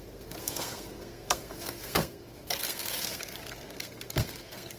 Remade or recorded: remade